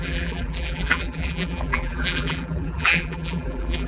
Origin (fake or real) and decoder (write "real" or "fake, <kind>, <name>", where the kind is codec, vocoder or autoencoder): fake, vocoder, BigVGAN v2